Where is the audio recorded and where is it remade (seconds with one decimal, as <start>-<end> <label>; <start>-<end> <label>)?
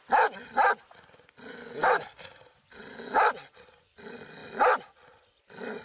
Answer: 0.0-5.8 recorded